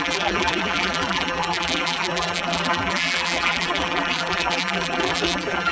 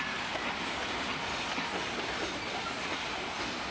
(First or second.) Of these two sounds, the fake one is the first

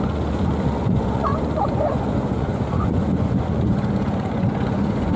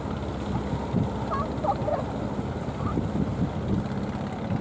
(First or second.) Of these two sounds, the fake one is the first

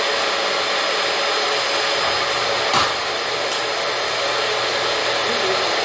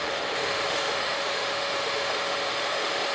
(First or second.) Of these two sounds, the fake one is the second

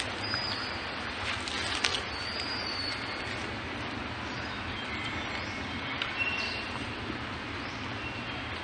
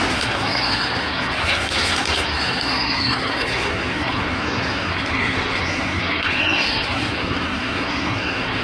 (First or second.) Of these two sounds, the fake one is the second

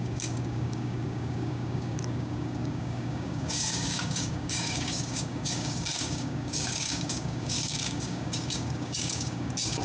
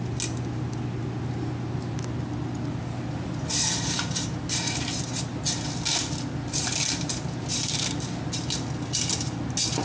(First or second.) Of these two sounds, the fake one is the first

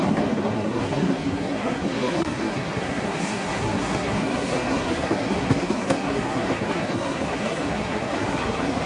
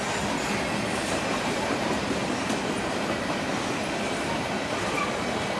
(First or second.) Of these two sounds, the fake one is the first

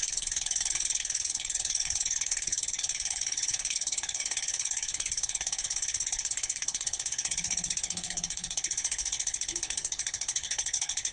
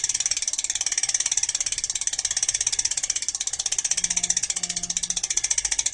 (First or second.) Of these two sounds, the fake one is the first